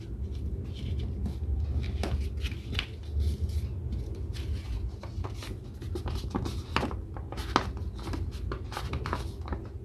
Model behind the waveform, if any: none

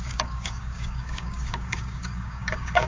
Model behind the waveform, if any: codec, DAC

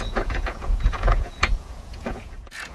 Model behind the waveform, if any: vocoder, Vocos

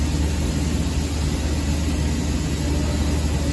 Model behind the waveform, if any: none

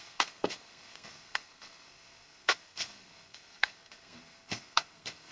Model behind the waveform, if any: codec, SNAC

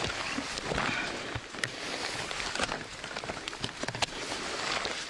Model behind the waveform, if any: none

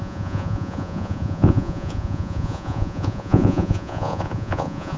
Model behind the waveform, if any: vocoder, Vocos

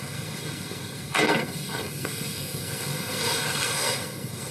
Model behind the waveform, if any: codec, SNAC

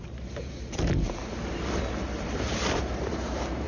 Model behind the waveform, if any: vocoder, BigVGAN v2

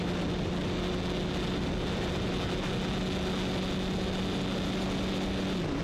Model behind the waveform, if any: none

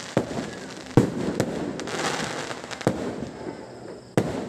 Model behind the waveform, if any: none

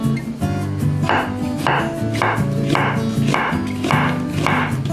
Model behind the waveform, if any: none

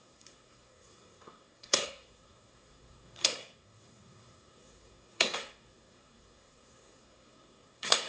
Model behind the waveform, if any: codec, SNAC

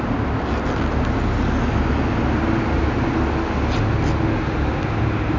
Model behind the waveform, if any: none